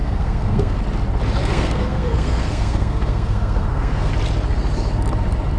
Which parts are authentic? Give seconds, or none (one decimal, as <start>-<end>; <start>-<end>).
0.8-1.4; 4.1-5.6